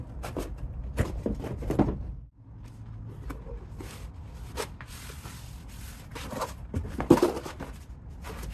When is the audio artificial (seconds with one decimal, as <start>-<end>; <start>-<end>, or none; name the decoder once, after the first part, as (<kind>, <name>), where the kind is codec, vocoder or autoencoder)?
6.1-6.8 (vocoder, BigVGAN v2)